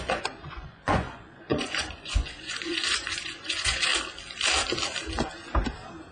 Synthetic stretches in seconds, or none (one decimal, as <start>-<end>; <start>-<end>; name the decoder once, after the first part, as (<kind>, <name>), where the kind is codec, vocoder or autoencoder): 0.0-3.9 (vocoder, Vocos)